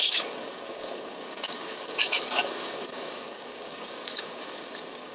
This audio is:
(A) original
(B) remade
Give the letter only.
B